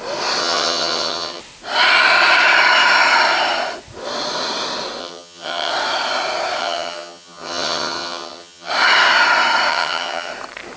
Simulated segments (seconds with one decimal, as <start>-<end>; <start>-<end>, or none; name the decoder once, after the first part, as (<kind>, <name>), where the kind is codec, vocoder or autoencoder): 0.4-1.4 (vocoder, HiFi-GAN); 5.0-5.7; 6.6-8.7; 9.7-10.3